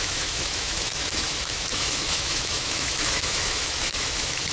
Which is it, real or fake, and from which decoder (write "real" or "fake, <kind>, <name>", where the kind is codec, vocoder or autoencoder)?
fake, autoencoder, DAC-VAE